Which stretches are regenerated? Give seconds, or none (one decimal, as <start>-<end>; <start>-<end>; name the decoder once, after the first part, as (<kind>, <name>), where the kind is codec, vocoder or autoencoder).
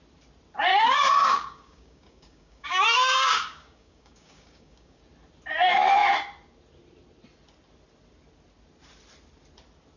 0.7-5.0 (codec, DAC)